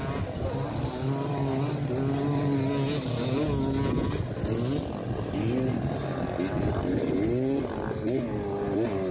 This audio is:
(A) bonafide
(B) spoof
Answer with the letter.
A